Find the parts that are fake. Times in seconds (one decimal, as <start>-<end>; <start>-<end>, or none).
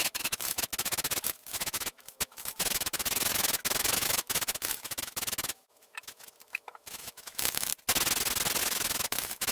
0.0-7.7; 8.6-9.5